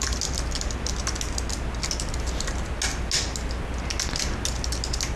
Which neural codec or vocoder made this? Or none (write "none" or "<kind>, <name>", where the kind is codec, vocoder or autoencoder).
none